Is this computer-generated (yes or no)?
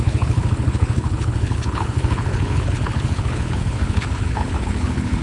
yes